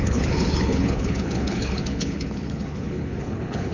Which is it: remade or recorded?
remade